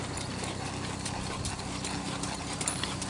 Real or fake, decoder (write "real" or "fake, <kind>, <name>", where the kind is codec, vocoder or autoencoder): real